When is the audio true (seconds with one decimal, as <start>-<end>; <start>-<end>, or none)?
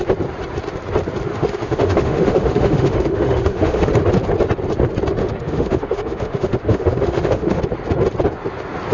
0.0-1.3; 3.9-5.2; 7.6-8.9